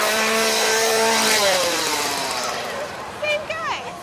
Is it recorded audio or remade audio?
remade